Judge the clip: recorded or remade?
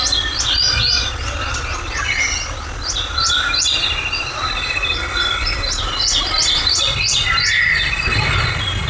recorded